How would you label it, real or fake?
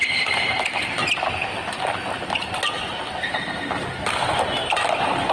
fake